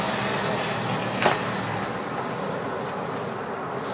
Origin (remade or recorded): recorded